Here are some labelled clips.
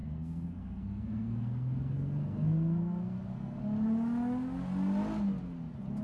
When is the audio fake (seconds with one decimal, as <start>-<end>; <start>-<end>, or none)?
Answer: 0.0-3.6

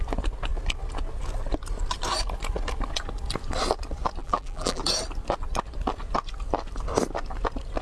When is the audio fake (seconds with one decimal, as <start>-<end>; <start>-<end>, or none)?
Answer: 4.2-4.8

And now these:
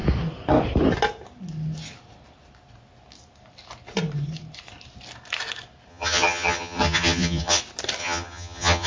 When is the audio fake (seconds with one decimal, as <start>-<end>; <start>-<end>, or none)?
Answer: 5.9-7.6; 8.0-8.9

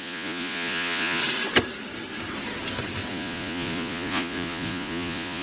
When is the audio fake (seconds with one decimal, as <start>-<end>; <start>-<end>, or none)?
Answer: 0.0-1.2; 3.1-5.4

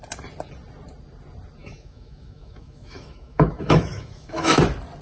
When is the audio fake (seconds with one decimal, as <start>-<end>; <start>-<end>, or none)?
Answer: 1.6-4.6